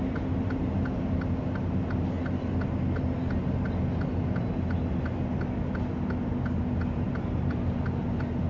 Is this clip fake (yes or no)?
no